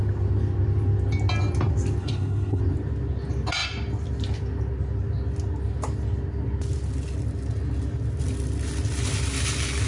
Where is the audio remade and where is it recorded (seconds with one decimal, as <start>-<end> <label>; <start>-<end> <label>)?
0.0-2.0 recorded; 2.0-2.6 remade; 2.6-9.9 recorded